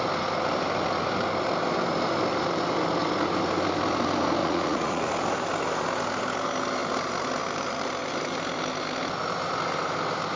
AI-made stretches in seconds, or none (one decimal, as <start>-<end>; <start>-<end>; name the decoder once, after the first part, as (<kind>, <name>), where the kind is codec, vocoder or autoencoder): 4.4-5.1 (vocoder, Vocos)